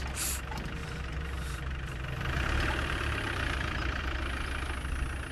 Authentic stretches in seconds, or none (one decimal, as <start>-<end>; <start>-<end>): 0.0-0.8; 4.0-5.3

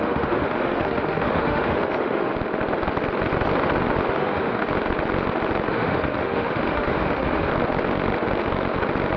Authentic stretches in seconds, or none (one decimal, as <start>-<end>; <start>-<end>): 2.3-4.1; 4.6-5.7; 7.5-9.2

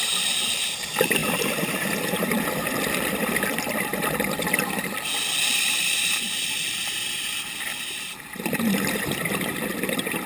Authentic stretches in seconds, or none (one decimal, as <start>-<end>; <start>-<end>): 1.2-2.0; 3.9-4.6

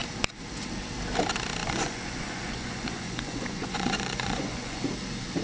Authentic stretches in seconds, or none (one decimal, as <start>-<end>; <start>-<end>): 0.0-1.6; 4.8-5.4

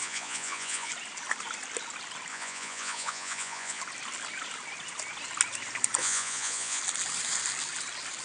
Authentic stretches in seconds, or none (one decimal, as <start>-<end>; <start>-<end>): 0.9-2.3; 3.8-6.0; 6.8-8.2